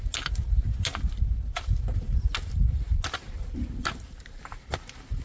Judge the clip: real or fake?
real